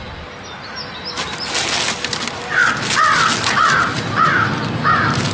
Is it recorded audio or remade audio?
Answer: recorded